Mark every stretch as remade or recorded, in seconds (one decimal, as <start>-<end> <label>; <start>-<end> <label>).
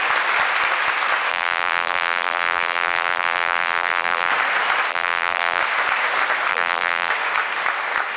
0.0-1.3 recorded; 1.3-4.3 remade; 4.3-4.9 recorded; 4.9-5.6 remade; 5.6-6.5 recorded; 6.5-7.1 remade; 7.1-8.2 recorded